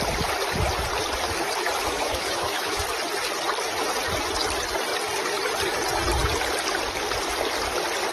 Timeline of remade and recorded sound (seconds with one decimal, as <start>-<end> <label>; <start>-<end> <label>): 0.0-1.8 recorded; 1.8-2.8 remade; 2.8-8.1 recorded